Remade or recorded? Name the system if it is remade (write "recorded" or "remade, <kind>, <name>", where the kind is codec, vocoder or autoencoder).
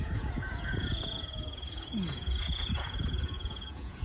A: remade, vocoder, Vocos